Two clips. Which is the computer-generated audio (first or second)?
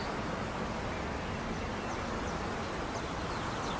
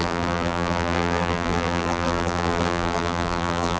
second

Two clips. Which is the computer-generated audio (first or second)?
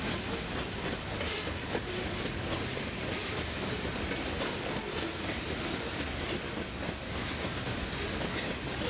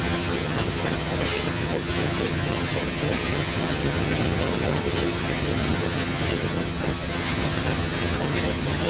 second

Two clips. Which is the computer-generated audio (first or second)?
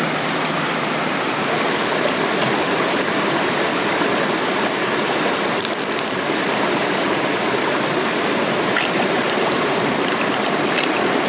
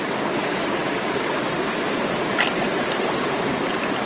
first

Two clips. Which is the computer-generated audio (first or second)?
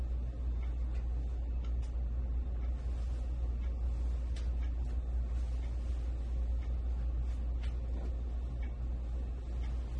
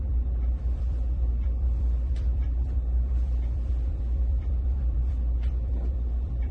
second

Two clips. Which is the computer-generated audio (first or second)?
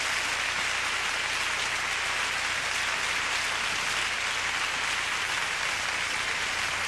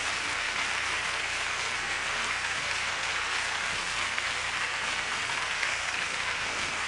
second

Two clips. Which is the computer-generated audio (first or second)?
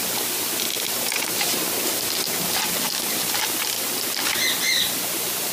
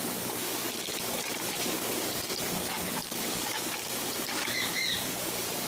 second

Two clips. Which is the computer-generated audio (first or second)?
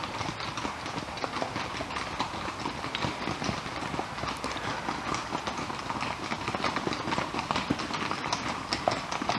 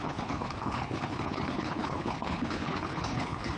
second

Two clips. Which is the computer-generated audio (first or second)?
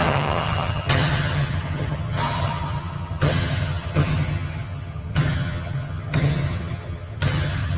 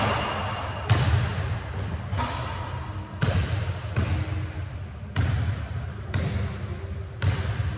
first